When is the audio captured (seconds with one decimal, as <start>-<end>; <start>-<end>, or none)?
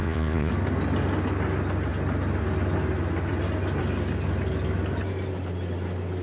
0.5-6.2